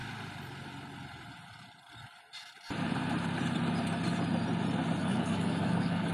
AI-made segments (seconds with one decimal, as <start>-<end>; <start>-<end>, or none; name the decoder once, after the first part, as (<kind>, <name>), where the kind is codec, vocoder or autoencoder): 5.0-6.1 (codec, DAC)